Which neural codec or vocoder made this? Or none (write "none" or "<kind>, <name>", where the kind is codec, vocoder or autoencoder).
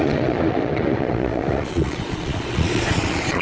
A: vocoder, Vocos